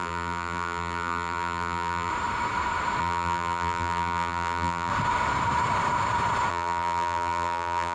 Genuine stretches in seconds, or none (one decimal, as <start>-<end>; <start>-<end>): 2.1-3.0; 4.9-6.5